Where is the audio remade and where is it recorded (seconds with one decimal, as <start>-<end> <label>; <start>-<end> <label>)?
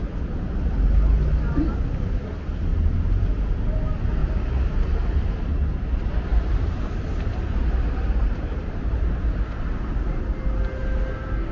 0.0-2.7 recorded; 2.7-3.4 remade; 3.4-4.2 recorded; 4.2-5.5 remade; 5.5-6.3 recorded; 6.3-10.2 remade; 10.2-11.5 recorded